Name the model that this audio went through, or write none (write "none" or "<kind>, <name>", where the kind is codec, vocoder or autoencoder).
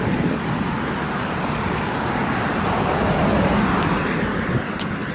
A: none